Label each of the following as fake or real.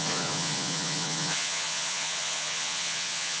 fake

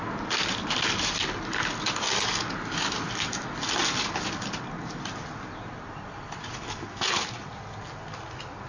real